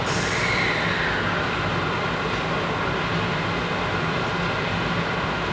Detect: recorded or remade recorded